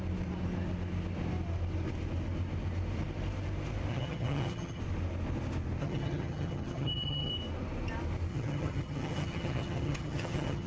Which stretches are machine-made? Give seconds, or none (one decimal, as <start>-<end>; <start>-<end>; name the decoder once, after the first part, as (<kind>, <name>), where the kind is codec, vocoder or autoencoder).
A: 3.9-4.8 (vocoder, HiFi-GAN); 5.8-7.3; 8.3-10.7